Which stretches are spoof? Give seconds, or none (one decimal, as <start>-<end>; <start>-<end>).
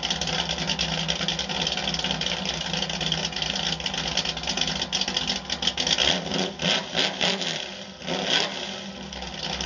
none